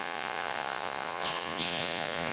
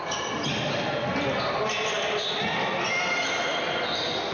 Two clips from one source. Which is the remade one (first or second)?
first